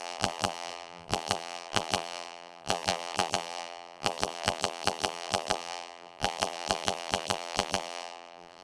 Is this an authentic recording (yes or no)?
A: no